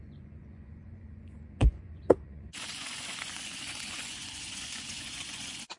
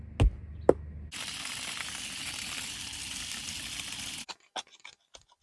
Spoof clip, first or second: first